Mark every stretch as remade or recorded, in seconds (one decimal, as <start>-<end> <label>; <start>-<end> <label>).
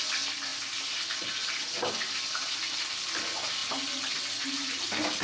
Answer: 0.0-5.2 recorded